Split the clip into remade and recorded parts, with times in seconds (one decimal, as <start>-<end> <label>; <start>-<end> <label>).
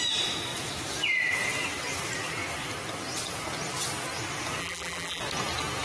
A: 0.0-4.6 recorded; 4.6-5.2 remade; 5.2-5.8 recorded